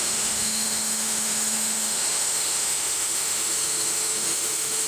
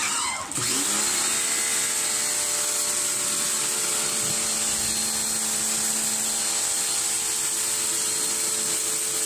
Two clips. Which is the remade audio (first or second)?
first